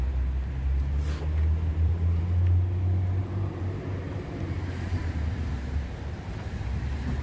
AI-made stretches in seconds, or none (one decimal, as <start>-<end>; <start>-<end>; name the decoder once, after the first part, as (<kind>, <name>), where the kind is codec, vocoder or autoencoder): 1.7-2.2 (vocoder, BigVGAN v2); 3.2-6.8